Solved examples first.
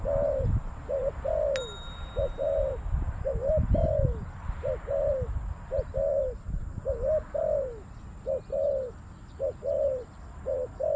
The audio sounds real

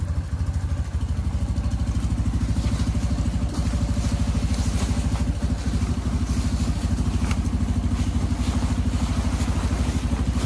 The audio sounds real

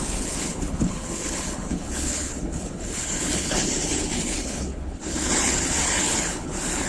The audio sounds fake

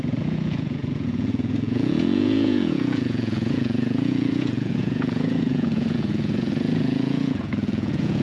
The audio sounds fake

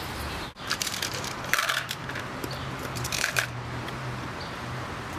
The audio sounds fake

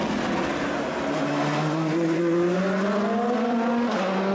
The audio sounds real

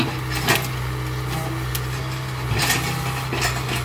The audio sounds real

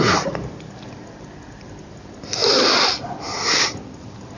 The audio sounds real